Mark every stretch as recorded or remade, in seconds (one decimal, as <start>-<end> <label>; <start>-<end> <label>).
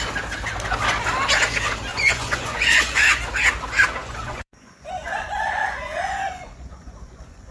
0.0-1.9 recorded; 1.9-3.2 remade; 3.2-4.0 recorded; 4.0-7.5 remade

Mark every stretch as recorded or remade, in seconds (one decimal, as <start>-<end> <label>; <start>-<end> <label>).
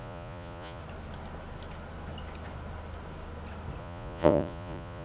0.0-0.8 remade; 0.8-3.8 recorded; 3.8-5.0 remade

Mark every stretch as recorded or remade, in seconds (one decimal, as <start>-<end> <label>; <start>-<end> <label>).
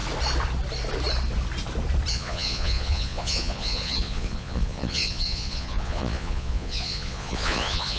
0.0-2.1 recorded; 2.1-8.0 remade